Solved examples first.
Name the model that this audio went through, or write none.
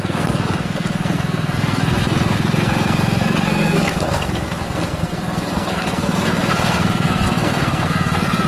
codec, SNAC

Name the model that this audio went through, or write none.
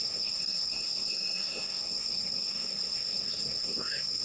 codec, SNAC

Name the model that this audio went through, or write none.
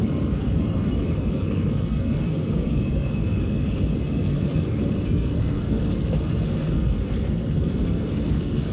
codec, SNAC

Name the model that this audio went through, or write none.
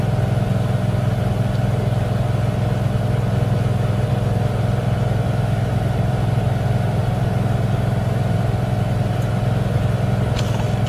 none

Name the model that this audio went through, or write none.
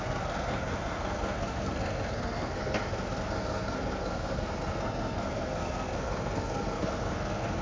codec, SNAC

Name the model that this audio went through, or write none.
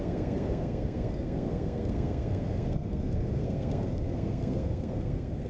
codec, SNAC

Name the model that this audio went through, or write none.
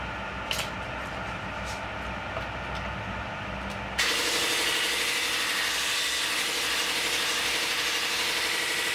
none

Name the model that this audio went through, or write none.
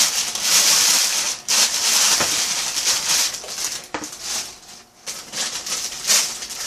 none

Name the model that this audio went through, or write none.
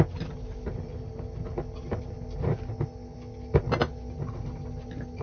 none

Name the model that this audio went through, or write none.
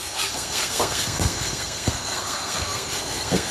codec, SNAC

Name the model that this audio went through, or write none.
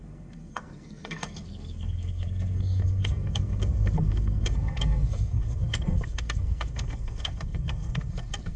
codec, SNAC